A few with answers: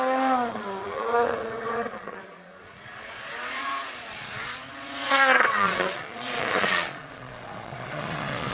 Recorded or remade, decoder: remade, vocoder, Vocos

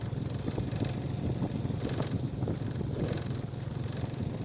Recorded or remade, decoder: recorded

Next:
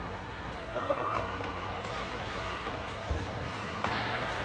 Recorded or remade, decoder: remade, codec, SNAC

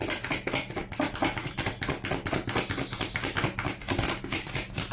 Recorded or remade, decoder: recorded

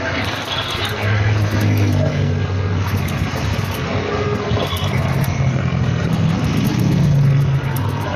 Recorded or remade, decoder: remade, codec, SNAC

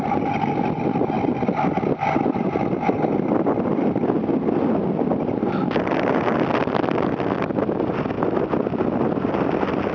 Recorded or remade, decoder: recorded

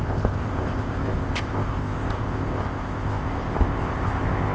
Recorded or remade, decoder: remade, codec, ZipCodec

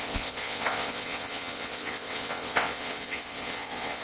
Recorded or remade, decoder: remade, vocoder, WaveNeXt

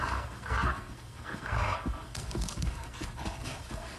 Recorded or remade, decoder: remade, codec, SNAC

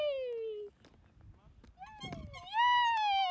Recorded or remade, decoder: recorded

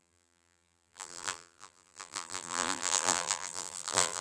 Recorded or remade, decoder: remade, vocoder, BigVGAN v2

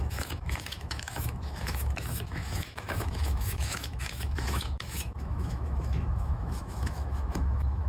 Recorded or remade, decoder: remade, autoencoder, DAC-VAE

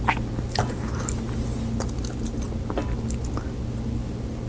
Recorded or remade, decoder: recorded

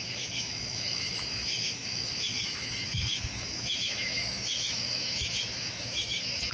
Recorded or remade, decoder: remade, autoencoder, DAC-VAE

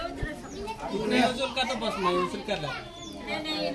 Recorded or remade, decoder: recorded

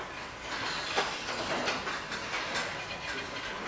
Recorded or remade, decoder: recorded